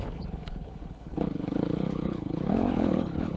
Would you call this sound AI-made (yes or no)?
yes